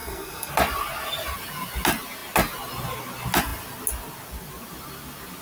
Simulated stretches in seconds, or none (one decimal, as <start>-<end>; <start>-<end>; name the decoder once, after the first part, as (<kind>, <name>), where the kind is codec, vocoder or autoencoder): 0.0-0.5 (codec, SNAC)